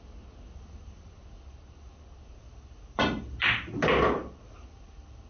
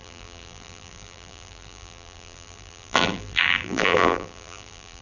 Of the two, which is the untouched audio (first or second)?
first